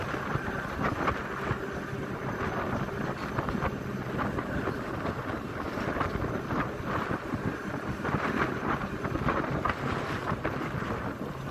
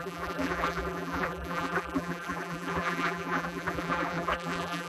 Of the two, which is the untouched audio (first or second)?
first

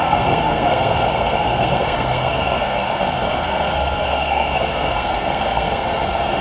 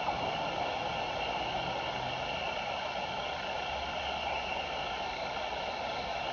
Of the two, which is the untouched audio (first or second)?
second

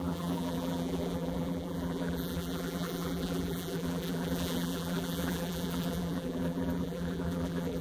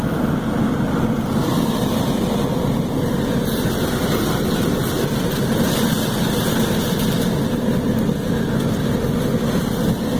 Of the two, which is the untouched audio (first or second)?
second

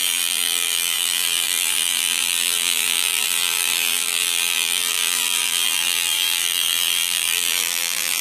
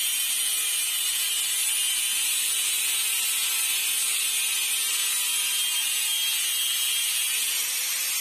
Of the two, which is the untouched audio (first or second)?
second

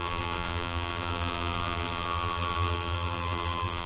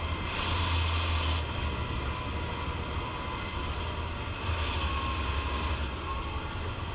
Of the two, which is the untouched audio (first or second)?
second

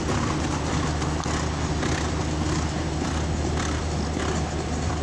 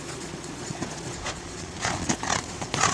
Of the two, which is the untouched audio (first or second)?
first